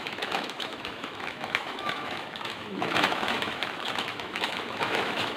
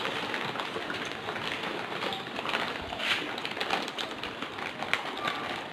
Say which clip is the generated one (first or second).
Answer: first